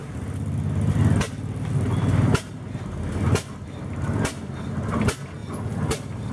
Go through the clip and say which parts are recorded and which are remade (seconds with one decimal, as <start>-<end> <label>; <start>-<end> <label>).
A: 0.0-6.3 recorded